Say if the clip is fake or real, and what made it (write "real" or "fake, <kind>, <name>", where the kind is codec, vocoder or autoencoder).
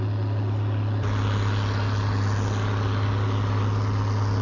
real